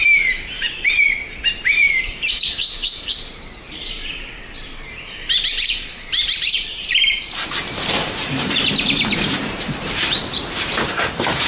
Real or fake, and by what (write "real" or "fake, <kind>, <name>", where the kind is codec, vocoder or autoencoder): fake, vocoder, BigVGAN v2